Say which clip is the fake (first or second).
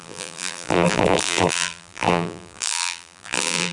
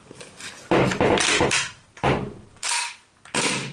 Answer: first